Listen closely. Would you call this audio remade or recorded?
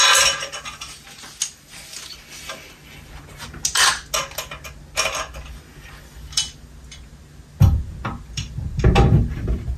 recorded